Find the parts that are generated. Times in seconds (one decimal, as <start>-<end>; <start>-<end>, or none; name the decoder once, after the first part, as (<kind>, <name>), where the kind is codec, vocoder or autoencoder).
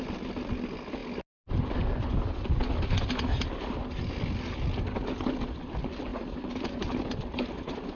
none